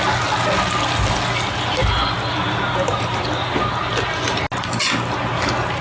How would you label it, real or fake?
real